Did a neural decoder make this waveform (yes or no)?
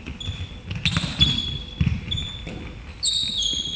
no